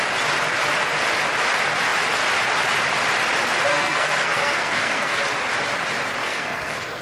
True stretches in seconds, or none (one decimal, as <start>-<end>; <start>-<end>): 0.0-3.7; 5.2-6.2